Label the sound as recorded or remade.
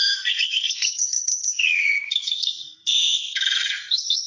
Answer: remade